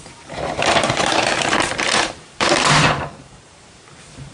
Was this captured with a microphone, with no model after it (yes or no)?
no